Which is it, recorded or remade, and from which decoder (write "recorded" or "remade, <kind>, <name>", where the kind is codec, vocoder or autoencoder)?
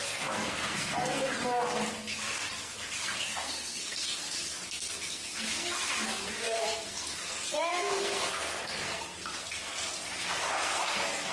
remade, codec, SNAC